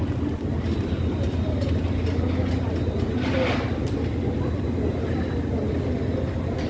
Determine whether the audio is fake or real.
real